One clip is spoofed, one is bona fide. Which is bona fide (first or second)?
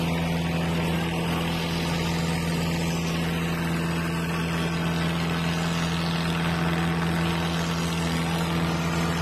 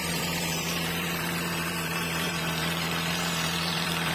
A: first